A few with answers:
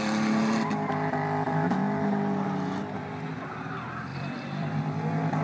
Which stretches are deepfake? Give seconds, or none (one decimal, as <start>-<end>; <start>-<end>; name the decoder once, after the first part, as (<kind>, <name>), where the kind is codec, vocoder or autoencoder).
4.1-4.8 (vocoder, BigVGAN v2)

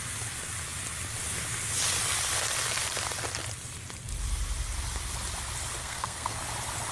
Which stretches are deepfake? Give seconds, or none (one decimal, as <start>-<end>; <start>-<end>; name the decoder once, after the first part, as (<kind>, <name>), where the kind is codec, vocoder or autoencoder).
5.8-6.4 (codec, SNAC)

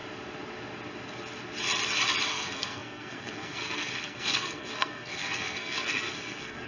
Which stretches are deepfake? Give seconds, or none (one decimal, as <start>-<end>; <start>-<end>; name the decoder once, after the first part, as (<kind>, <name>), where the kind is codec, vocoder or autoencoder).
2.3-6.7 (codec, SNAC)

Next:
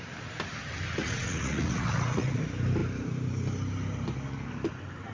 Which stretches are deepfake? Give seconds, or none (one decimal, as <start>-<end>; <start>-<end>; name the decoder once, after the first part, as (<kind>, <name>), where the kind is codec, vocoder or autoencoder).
1.0-2.4 (vocoder, Vocos)

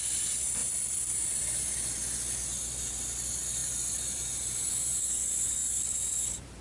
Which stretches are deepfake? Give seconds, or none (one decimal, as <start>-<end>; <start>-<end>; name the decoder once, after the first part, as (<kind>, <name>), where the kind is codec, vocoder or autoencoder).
0.6-1.4 (vocoder, BigVGAN v2); 3.6-4.7; 5.6-6.6

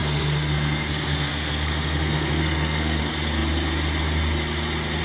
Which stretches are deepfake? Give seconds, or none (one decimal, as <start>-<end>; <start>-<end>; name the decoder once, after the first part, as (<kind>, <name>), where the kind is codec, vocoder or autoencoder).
0.0-3.0 (codec, SNAC)